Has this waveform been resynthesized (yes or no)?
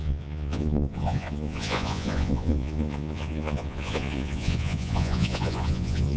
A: yes